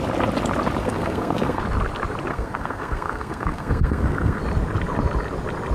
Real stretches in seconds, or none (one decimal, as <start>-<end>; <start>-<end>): 0.0-0.8; 1.6-2.3; 4.4-5.7